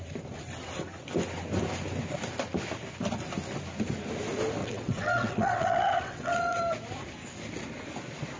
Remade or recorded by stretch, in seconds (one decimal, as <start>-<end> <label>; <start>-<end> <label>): 0.0-4.6 recorded; 4.6-6.6 remade; 6.6-8.4 recorded